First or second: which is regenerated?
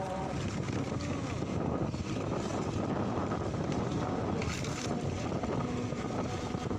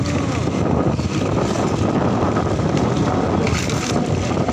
second